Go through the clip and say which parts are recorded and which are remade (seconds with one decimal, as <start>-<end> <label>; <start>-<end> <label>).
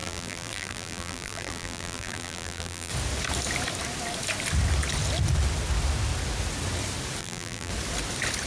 0.0-2.9 remade; 2.9-7.2 recorded; 7.2-7.7 remade; 7.7-8.5 recorded